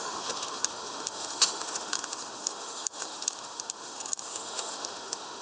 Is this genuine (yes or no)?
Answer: no